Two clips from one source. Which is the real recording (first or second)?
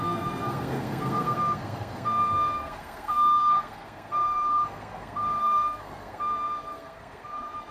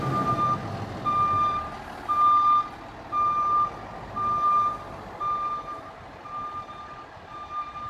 second